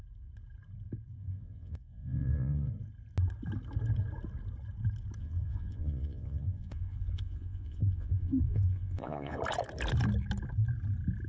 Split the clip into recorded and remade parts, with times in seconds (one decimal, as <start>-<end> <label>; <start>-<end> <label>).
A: 0.0-1.2 recorded; 1.2-2.7 remade; 2.7-5.2 recorded; 5.2-9.4 remade; 9.4-11.3 recorded